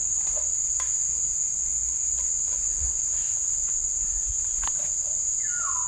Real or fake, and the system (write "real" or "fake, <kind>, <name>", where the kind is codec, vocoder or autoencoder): real